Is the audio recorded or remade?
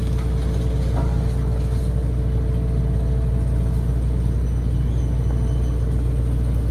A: recorded